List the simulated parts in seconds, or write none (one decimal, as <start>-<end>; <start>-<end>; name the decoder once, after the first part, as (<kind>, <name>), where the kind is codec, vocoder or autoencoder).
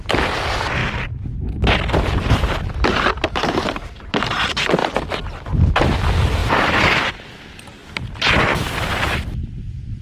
none